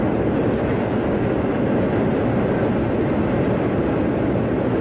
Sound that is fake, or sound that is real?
real